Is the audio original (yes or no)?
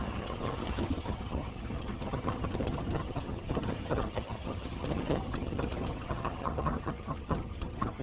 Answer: no